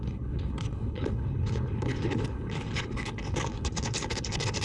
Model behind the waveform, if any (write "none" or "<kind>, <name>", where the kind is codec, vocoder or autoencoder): codec, HILCodec